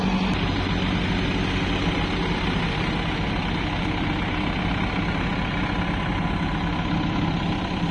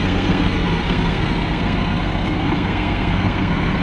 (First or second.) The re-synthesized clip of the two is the second